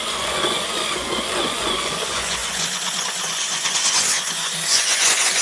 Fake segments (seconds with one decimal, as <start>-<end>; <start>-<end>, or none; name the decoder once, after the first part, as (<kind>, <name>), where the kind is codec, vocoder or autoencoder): 0.0-5.4 (vocoder, Vocos)